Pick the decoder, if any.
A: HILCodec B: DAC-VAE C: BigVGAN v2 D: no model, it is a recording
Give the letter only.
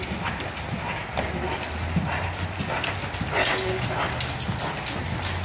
D